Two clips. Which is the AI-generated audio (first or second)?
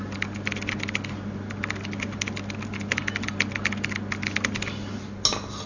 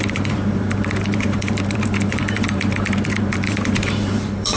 second